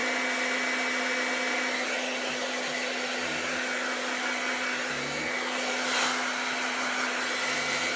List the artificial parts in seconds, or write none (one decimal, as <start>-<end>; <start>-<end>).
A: none